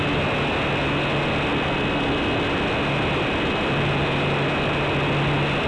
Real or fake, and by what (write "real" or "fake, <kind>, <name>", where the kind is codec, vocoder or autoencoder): real